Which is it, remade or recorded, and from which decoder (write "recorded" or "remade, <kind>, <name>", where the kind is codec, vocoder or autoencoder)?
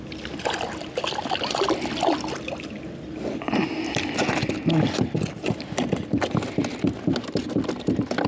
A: recorded